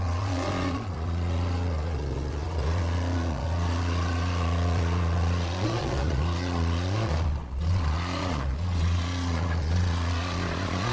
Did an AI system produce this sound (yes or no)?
yes